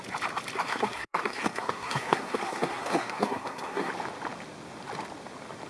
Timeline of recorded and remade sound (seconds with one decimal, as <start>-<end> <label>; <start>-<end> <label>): 0.0-0.6 recorded; 0.6-3.9 remade; 3.9-5.7 recorded